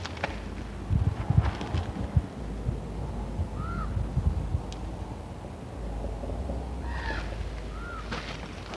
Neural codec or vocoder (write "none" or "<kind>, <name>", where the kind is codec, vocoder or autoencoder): none